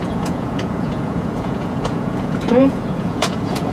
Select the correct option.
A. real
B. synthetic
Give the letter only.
B